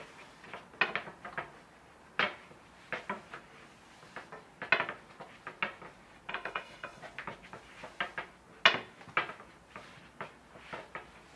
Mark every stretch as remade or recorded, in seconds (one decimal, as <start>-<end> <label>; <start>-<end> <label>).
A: 0.0-6.3 recorded; 6.3-7.0 remade; 7.0-11.4 recorded